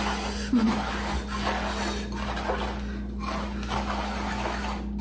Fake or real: real